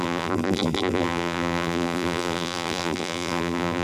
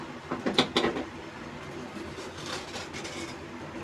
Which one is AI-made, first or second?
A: first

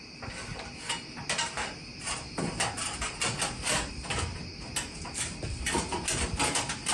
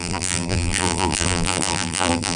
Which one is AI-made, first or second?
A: second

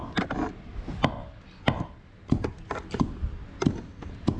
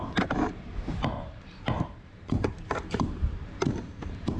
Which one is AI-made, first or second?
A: second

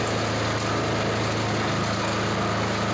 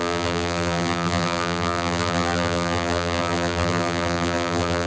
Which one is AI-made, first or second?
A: second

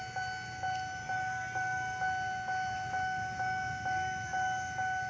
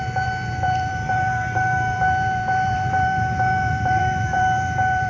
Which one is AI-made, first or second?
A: second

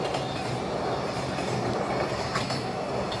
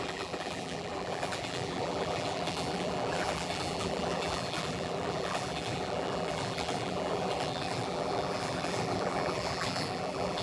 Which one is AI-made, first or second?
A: second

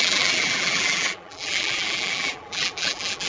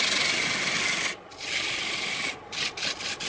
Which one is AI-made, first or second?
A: first